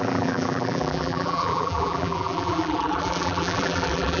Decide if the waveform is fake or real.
fake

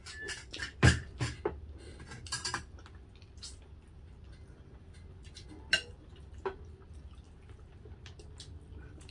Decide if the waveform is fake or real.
real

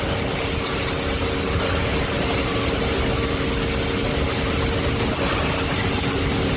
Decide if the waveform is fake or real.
real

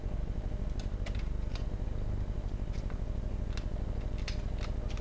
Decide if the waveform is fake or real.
real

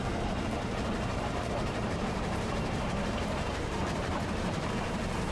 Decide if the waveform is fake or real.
fake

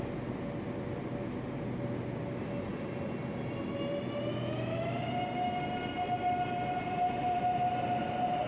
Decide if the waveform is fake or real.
real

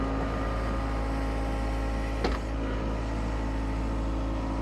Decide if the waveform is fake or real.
real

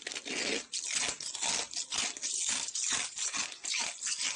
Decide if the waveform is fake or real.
real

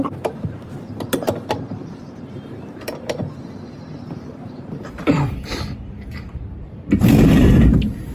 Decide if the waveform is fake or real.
fake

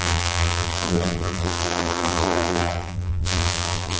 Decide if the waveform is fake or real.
fake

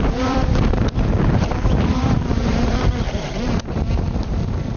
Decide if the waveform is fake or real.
fake